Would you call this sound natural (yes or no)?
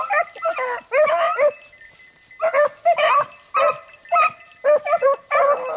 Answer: yes